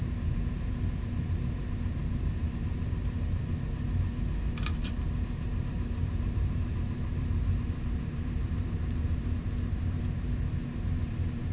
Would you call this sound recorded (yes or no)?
no